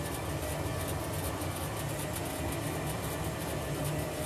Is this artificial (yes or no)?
no